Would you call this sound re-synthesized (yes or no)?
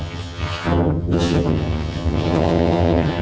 yes